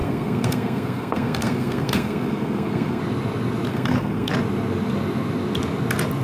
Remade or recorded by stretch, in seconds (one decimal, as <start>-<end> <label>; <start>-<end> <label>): 0.0-3.0 remade; 3.0-3.7 recorded; 3.7-4.3 remade; 4.3-6.2 recorded